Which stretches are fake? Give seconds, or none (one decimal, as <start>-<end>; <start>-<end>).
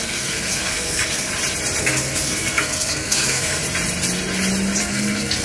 0.0-1.3; 1.8-3.6; 4.8-5.4